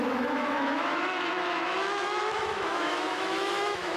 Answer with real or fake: fake